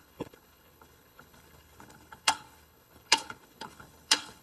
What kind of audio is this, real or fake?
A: fake